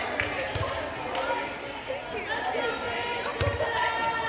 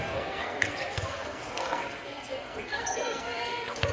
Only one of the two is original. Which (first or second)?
first